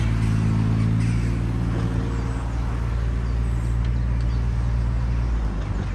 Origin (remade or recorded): recorded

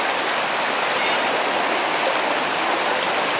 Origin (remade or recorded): recorded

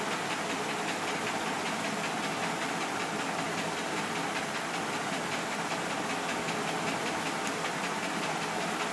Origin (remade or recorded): recorded